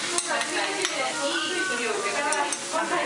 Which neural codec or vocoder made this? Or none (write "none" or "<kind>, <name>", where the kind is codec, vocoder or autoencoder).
none